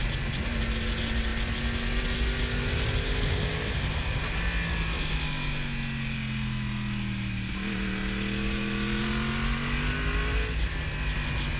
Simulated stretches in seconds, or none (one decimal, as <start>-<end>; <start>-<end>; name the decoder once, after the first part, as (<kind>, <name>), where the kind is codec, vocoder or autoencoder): none